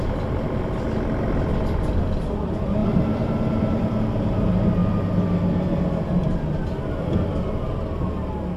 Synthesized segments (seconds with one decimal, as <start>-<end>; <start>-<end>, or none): 2.8-4.0